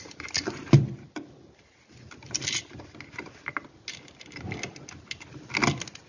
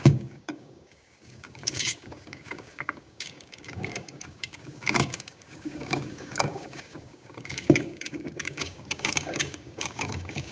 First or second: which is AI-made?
second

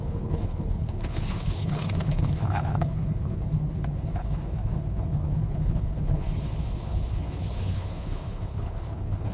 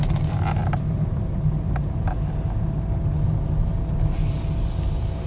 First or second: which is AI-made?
first